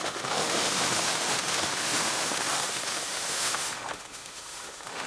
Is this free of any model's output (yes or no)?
no